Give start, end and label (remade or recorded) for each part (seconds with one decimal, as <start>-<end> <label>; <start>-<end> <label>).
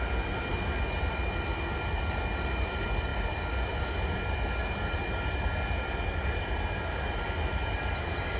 0.0-8.4 recorded